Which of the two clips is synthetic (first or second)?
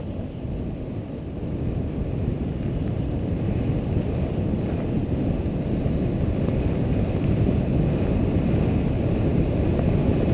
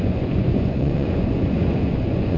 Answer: second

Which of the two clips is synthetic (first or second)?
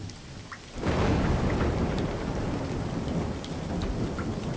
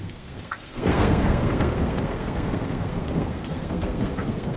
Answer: second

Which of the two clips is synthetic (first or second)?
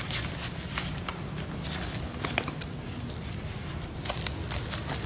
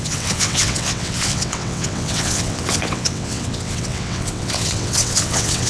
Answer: second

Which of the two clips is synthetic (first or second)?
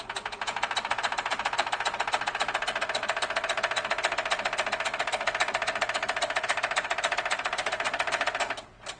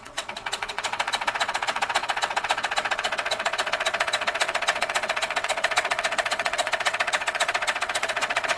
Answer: second